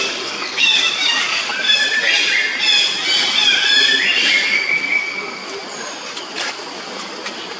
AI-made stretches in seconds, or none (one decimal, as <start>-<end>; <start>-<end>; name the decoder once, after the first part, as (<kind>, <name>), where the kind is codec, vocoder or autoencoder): 0.0-1.5 (codec, DAC); 4.2-5.4

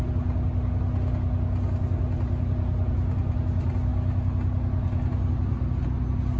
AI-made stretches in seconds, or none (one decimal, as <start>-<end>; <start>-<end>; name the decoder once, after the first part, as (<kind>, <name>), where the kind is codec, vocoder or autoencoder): none

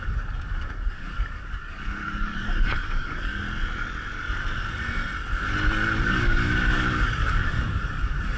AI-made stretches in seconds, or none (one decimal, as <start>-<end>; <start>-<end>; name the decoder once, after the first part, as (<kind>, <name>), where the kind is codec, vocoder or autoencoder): 0.0-3.3 (codec, DAC); 6.0-8.4

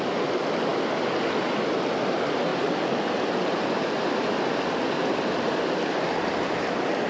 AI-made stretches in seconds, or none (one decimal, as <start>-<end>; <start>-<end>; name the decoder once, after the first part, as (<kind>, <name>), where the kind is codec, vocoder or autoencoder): none

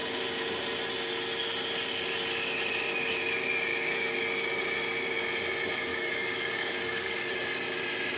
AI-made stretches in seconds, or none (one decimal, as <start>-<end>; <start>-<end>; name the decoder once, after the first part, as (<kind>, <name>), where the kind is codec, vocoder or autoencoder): 3.7-4.2 (codec, DAC); 5.9-7.3

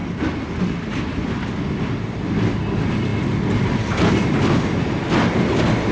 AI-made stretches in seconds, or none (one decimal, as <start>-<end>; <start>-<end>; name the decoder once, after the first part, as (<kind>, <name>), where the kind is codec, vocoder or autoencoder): none

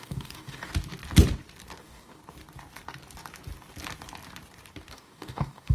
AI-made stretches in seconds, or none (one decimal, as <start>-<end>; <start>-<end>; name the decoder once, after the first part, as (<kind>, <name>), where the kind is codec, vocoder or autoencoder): 0.0-0.7 (codec, DAC); 1.8-2.2; 4.9-5.7

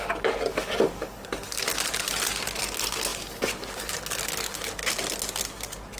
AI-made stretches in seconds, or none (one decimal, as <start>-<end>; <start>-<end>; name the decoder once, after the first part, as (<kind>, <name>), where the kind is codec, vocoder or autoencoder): 0.0-1.7 (codec, DAC); 2.6-4.8